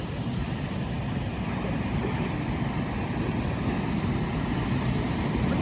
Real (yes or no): yes